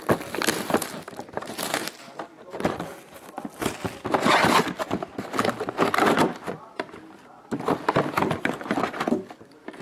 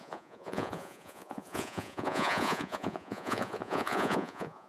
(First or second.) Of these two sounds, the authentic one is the first